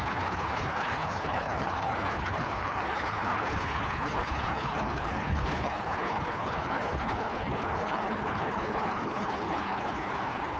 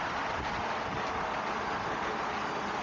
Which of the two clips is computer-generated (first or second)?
first